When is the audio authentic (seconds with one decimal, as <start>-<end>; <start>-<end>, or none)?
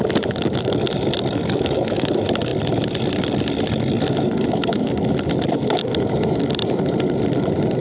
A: 0.0-1.4; 2.1-7.8